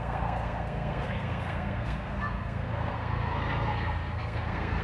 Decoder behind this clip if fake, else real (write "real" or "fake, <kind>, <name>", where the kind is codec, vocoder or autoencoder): fake, codec, SNAC